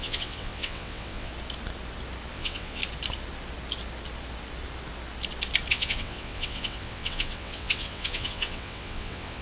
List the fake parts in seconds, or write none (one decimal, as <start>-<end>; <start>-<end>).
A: 0.0-1.3; 2.3-2.8; 5.7-9.4